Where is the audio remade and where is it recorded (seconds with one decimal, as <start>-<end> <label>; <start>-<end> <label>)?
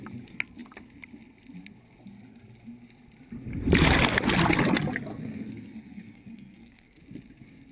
0.0-5.1 recorded; 5.1-7.0 remade; 7.0-7.7 recorded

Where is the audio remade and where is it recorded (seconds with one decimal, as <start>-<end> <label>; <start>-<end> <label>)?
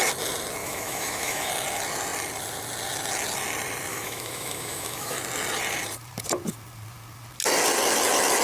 0.0-0.6 recorded; 0.6-1.5 remade; 1.5-3.9 recorded; 3.9-5.2 remade; 5.2-8.4 recorded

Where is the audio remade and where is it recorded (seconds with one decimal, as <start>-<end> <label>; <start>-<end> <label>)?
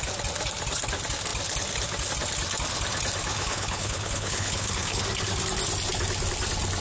0.0-3.3 recorded; 3.3-5.0 remade; 5.0-6.8 recorded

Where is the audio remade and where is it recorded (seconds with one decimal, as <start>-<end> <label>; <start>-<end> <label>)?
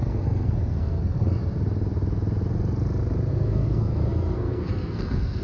0.0-1.4 remade; 1.4-3.3 recorded; 3.3-5.4 remade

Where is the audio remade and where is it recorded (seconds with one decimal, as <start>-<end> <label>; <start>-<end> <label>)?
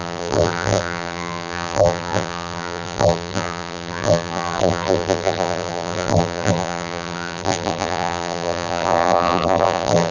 0.0-10.1 remade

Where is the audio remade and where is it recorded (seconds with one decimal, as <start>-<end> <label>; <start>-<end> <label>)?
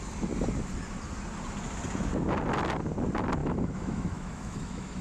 0.0-3.4 recorded; 3.4-5.0 remade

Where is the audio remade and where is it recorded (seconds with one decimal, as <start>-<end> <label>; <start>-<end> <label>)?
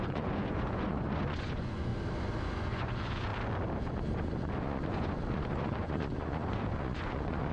0.0-1.9 remade; 1.9-2.4 recorded; 2.4-3.3 remade; 3.3-3.8 recorded; 3.8-7.5 remade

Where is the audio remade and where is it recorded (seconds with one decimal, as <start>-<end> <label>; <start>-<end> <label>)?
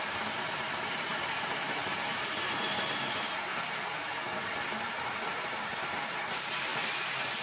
0.0-4.3 remade; 4.3-4.8 recorded; 4.8-6.7 remade; 6.7-7.4 recorded